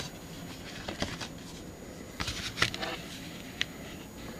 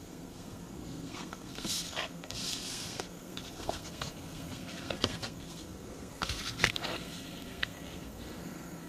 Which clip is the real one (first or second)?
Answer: first